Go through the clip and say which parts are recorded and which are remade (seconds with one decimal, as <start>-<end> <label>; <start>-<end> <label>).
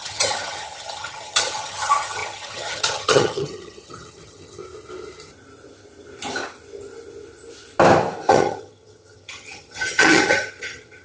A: 0.0-4.6 remade; 4.6-8.3 recorded; 8.3-11.0 remade